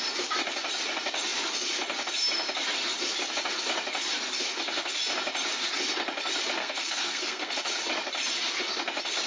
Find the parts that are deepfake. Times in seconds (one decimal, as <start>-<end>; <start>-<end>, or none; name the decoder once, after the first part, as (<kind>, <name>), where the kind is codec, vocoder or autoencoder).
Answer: 6.6-7.5 (codec, SNAC)

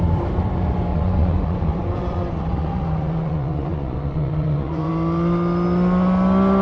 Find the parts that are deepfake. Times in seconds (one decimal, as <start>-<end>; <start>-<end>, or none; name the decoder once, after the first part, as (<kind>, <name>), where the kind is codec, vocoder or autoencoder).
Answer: 0.9-4.9 (vocoder, Vocos)

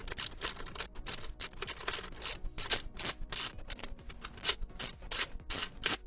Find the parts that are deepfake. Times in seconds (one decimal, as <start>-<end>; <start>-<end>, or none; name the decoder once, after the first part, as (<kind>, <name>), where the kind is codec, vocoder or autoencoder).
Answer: none

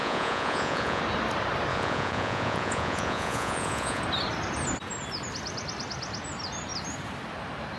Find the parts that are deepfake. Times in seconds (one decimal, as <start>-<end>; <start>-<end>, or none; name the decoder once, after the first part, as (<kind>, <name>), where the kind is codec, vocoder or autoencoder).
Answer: 0.0-1.0 (vocoder, Vocos); 1.7-4.0